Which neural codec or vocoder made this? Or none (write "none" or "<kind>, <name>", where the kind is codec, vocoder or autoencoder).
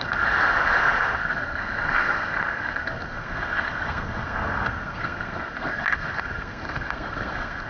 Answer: codec, SNAC